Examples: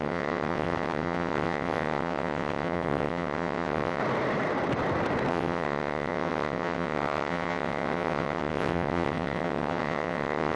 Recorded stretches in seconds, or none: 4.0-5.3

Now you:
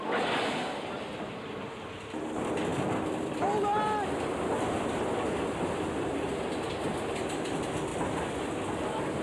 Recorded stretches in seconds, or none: 0.0-2.7; 6.9-7.9; 8.4-9.2

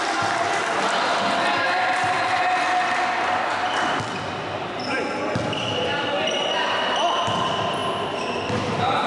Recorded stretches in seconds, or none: 0.0-9.1